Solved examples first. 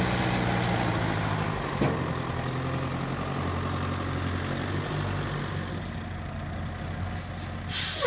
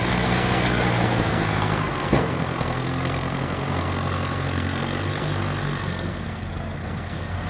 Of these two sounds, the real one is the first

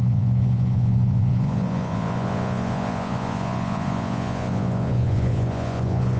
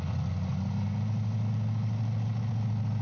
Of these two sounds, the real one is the second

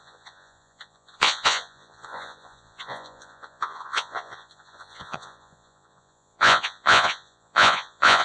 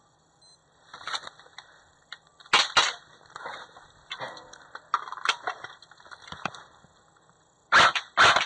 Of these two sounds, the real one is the second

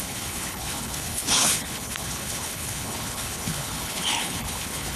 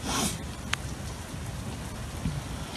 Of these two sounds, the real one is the second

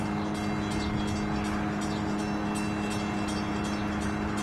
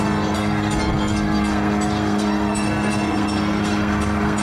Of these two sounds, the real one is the first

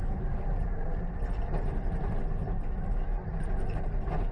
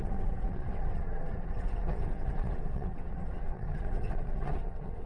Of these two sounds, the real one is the first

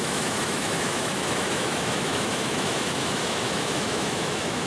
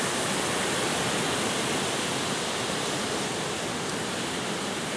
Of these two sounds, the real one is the second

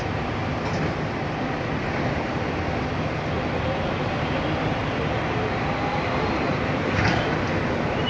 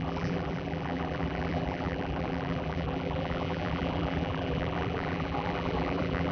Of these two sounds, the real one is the first